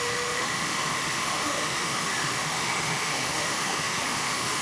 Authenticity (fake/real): fake